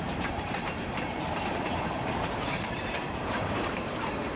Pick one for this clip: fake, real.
fake